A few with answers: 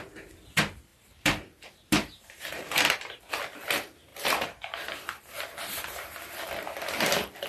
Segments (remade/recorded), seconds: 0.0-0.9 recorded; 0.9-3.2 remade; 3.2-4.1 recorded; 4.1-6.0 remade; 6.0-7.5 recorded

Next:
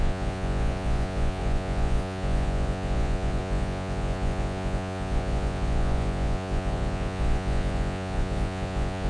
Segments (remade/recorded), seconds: 0.0-9.1 remade

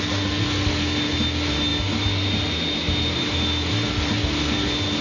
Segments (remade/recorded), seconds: 0.0-5.0 recorded

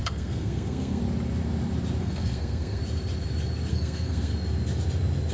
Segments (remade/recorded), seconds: 0.0-1.0 remade; 1.0-2.0 recorded; 2.0-2.8 remade; 2.8-3.7 recorded; 3.7-4.3 remade; 4.3-5.3 recorded

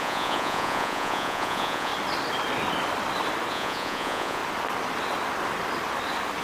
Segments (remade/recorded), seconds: 0.0-1.9 remade; 1.9-3.5 recorded; 3.5-4.4 remade; 4.4-6.4 recorded

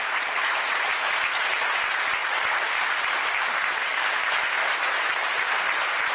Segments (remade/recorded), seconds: 0.0-6.1 recorded

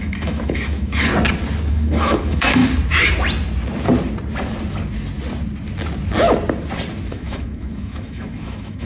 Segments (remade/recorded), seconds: 0.0-1.1 remade; 1.1-1.7 recorded; 1.7-2.6 remade; 2.6-7.1 recorded; 7.1-8.9 remade